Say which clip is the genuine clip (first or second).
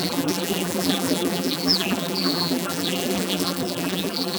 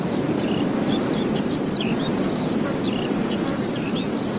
second